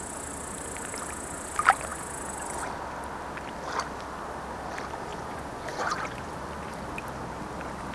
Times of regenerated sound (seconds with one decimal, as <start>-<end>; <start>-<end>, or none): 5.1-6.7